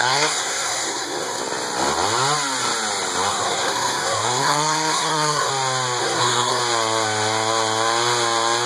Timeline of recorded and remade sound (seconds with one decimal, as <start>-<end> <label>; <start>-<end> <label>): 0.0-1.4 remade; 1.4-3.3 recorded; 3.3-5.5 remade; 5.5-6.0 recorded; 6.0-6.6 remade; 6.6-8.7 recorded